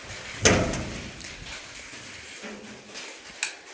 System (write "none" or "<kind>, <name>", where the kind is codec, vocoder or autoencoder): none